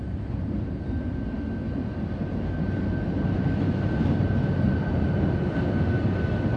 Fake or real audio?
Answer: real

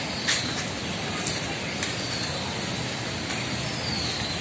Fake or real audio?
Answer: real